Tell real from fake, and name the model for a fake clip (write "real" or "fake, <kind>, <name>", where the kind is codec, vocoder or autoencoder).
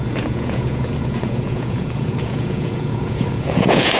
fake, vocoder, Vocos